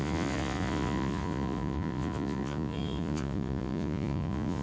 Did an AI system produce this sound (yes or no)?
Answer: yes